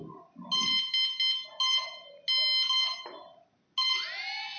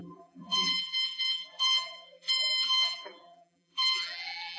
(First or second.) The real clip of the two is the first